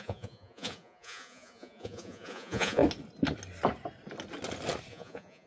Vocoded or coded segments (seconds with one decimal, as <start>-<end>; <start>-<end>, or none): 0.0-2.8; 4.9-5.5

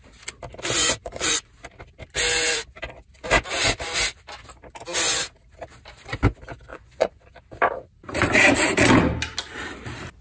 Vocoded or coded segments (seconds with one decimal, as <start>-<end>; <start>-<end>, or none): 0.8-1.5; 6.7-7.3